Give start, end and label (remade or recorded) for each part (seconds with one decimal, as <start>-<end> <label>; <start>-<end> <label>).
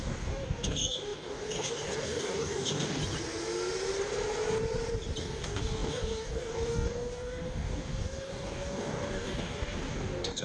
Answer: 0.0-3.0 remade; 3.0-5.2 recorded; 5.2-10.4 remade